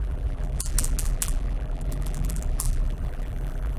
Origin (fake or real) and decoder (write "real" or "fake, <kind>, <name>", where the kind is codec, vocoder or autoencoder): fake, vocoder, BigVGAN v2